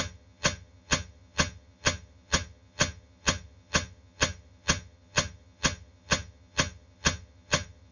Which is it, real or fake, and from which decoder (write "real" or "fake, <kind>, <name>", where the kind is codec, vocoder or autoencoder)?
fake, vocoder, HiFi-GAN